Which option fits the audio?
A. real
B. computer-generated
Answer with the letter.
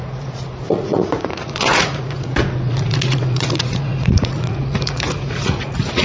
B